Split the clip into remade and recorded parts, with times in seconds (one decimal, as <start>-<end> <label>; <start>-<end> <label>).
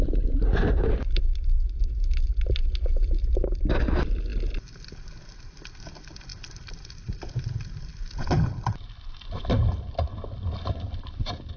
0.0-11.6 recorded